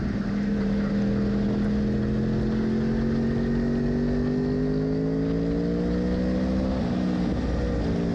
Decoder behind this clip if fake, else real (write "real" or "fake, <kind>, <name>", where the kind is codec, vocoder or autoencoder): real